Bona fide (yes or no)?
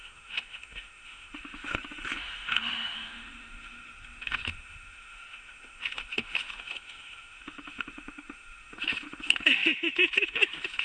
no